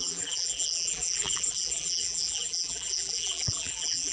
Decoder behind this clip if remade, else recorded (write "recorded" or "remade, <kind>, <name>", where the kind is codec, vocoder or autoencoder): remade, vocoder, BigVGAN v2